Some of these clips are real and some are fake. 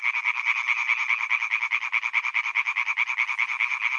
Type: real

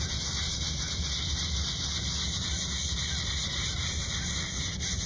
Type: real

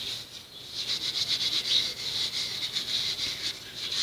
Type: real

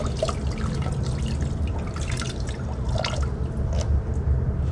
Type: real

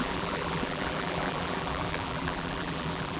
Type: fake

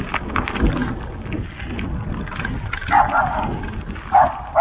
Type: real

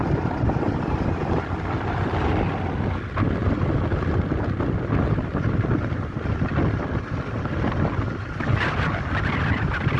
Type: real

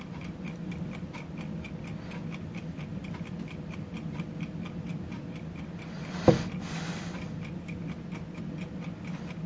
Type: real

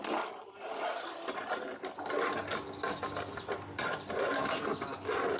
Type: real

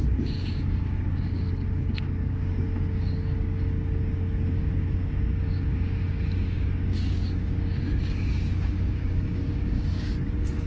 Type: fake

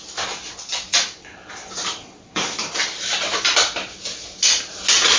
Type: real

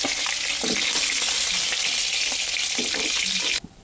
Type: real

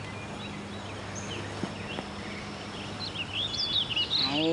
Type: real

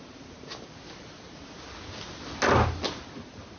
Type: real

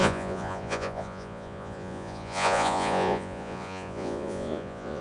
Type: fake